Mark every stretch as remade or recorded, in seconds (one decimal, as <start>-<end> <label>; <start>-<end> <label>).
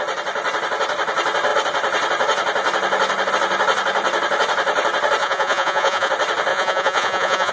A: 0.0-5.2 recorded; 5.2-6.1 remade; 6.1-6.5 recorded; 6.5-7.5 remade